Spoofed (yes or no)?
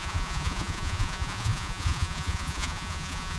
yes